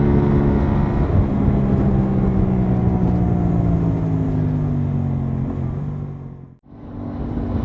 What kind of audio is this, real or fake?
real